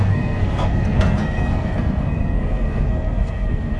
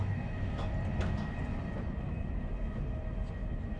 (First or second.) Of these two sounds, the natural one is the second